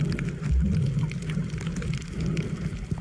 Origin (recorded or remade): recorded